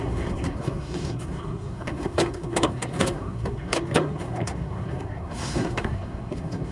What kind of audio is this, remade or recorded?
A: remade